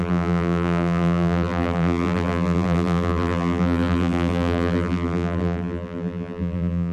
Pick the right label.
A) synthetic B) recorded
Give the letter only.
A